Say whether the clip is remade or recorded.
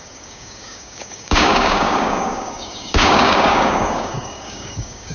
remade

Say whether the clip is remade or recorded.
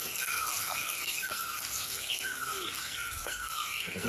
remade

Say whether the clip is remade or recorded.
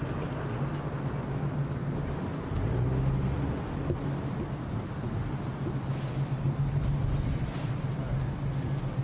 recorded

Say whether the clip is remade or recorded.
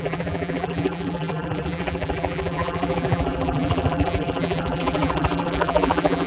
remade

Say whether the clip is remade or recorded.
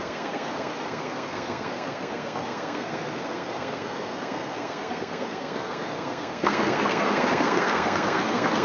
remade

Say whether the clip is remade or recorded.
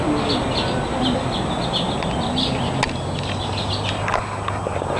recorded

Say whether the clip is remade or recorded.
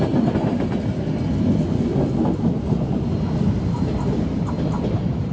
recorded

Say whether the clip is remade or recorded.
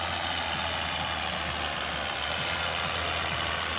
recorded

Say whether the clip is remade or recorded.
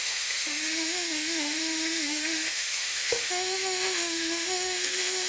remade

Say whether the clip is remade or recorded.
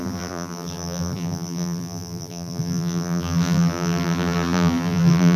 remade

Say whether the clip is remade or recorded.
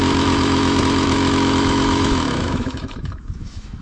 remade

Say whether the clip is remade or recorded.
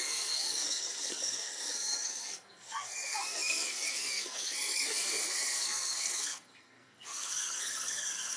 remade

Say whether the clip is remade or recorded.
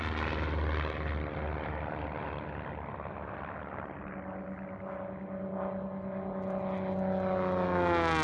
recorded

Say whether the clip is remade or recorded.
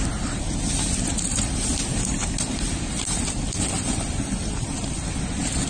recorded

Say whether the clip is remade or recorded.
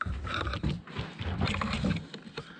remade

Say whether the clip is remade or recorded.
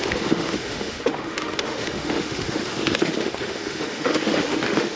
remade